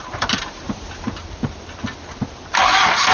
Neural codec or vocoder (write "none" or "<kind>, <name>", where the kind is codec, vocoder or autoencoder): none